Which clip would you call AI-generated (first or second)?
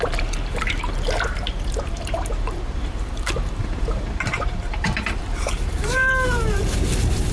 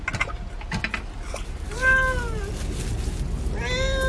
first